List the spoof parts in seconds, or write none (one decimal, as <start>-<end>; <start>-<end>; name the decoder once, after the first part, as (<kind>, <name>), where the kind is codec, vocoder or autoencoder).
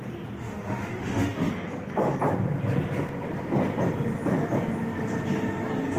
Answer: 0.4-1.5 (autoencoder, DAC-VAE)